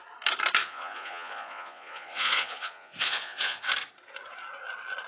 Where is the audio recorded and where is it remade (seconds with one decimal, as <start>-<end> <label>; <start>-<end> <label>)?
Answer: 0.0-0.6 recorded; 0.6-3.7 remade; 3.7-5.1 recorded